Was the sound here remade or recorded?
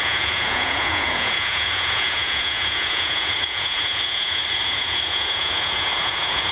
remade